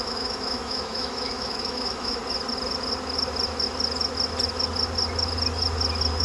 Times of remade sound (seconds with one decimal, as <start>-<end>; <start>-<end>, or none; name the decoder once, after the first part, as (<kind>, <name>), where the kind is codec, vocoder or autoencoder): 0.0-2.2 (autoencoder, DAC-VAE)